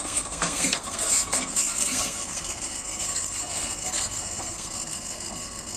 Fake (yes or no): yes